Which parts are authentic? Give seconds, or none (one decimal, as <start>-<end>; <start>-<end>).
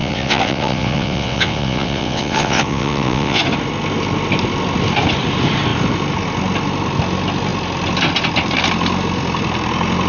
3.4-10.1